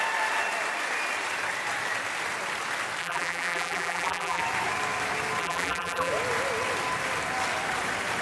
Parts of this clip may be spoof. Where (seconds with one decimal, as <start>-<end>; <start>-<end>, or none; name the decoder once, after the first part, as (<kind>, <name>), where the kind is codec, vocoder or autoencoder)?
3.0-4.4 (vocoder, BigVGAN v2); 5.4-6.1